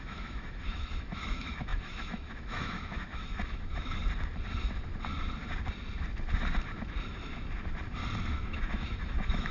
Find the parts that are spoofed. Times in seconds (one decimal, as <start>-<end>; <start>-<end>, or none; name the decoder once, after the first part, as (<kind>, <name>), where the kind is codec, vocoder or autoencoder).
0.0-4.0 (autoencoder, DAC-VAE); 8.3-9.5